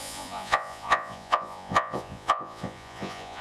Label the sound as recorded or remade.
remade